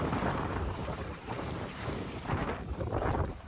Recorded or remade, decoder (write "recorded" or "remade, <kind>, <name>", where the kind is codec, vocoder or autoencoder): remade, vocoder, BigVGAN v2